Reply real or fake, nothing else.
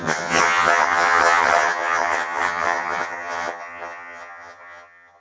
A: fake